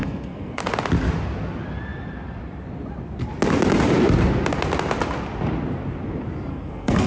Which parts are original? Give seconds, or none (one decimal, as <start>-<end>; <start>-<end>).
0.6-6.5